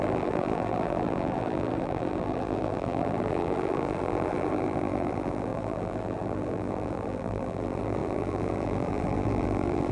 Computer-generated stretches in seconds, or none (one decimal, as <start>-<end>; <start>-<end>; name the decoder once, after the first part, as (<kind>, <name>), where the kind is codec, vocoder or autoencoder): 0.0-9.9 (vocoder, BigVGAN v2)